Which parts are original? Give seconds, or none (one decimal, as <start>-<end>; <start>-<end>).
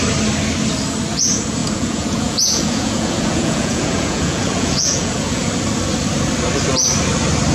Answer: 0.0-1.6; 5.5-7.5